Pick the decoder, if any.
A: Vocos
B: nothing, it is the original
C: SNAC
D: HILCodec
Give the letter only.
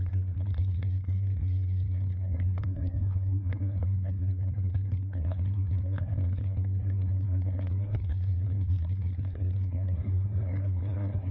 C